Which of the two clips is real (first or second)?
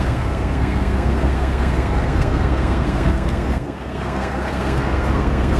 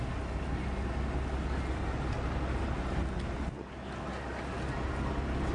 second